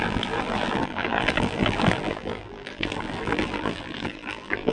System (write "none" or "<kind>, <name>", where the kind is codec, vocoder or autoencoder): vocoder, BigVGAN v2